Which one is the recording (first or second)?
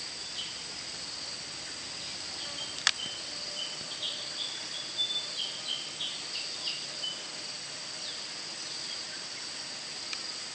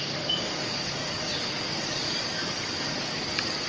first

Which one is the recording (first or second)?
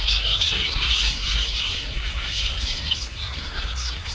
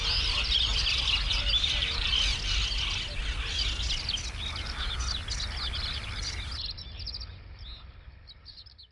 second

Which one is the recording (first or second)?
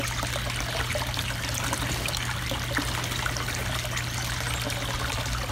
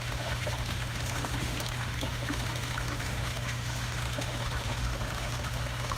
first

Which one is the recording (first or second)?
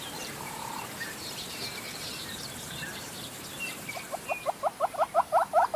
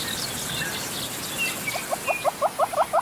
second